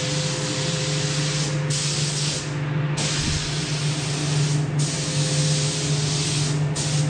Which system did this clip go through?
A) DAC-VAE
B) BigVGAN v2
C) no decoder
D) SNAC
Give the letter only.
C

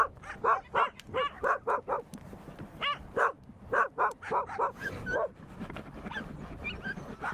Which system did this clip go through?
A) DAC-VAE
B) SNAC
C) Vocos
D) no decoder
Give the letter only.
D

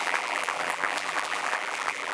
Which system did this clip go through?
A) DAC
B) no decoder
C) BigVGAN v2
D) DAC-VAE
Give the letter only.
C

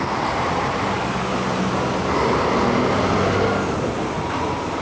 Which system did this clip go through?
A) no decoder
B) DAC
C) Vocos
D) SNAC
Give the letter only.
A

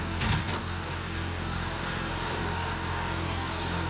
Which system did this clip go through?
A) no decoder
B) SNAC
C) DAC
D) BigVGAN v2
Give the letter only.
C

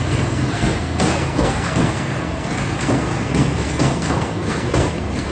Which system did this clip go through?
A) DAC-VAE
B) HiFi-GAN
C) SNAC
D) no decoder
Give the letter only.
C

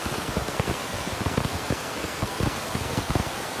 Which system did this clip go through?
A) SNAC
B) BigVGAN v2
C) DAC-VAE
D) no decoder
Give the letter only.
A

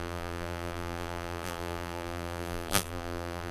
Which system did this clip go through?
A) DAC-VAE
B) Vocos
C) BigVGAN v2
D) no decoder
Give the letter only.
C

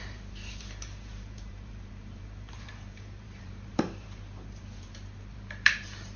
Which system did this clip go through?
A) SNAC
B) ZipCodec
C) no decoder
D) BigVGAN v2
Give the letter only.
D